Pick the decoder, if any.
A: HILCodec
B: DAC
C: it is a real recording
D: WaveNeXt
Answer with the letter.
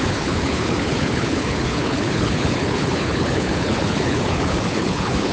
A